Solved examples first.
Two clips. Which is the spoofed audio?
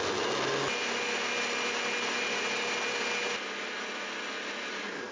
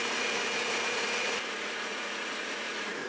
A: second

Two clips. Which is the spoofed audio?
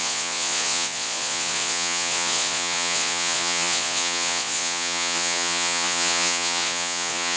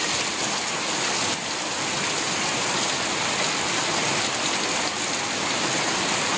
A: first